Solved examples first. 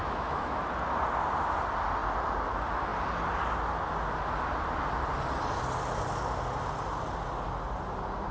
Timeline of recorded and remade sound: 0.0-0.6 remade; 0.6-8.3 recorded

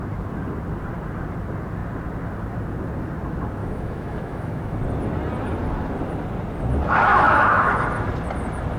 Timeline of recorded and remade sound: 0.0-3.6 recorded; 3.6-4.8 remade; 4.8-7.1 recorded; 7.1-7.7 remade; 7.7-8.8 recorded

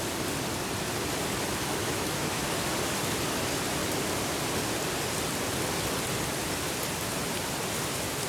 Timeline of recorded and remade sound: 0.0-1.8 recorded; 1.8-2.5 remade; 2.5-8.3 recorded

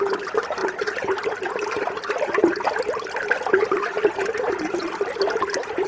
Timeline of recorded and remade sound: 0.0-5.9 recorded